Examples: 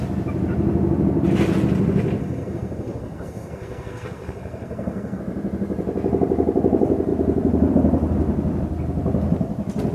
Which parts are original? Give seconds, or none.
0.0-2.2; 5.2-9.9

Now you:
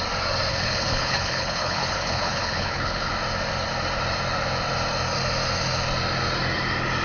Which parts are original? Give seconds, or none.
0.0-0.5; 3.1-7.0

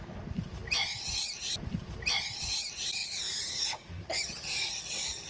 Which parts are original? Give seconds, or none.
0.0-3.0; 3.9-5.3